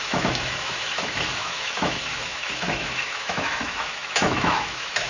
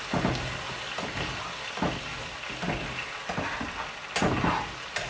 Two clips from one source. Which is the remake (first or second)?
first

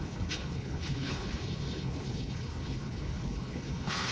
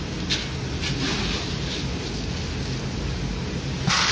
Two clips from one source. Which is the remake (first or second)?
first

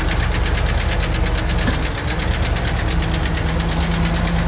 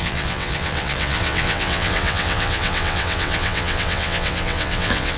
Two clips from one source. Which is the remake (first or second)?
second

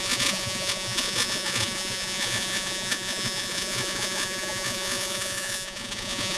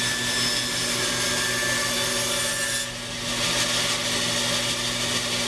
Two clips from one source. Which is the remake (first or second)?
first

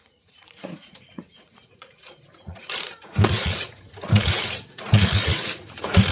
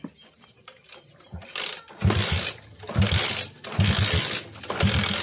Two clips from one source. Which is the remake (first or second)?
first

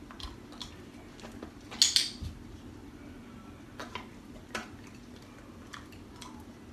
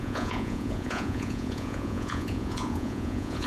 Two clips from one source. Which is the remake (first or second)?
second